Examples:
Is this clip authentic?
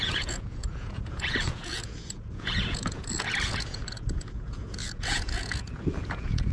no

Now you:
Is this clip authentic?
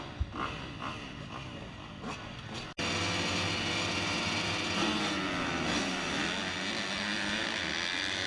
yes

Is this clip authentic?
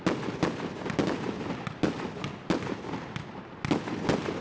yes